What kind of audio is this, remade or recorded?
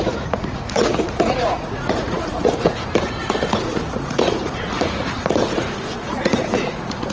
remade